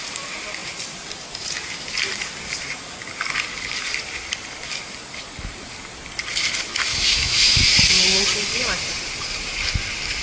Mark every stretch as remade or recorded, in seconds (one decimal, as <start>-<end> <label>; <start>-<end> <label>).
0.0-6.9 recorded; 6.9-7.7 remade; 7.7-10.2 recorded